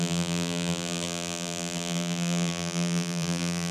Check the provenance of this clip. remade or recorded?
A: remade